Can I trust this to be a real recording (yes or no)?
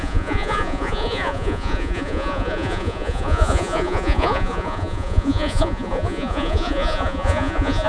no